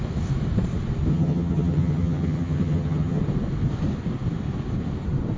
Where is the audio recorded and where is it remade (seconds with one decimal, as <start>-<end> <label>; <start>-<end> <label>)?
0.0-1.1 recorded; 1.1-3.2 remade; 3.2-5.4 recorded